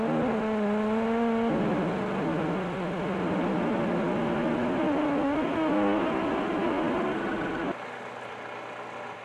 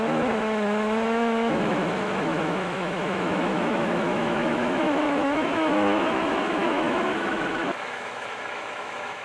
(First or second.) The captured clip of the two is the first